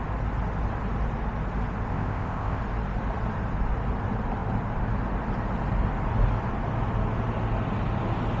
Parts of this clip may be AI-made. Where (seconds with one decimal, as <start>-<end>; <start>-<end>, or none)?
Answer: 1.9-2.6